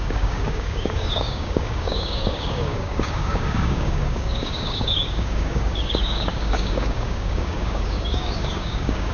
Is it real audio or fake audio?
fake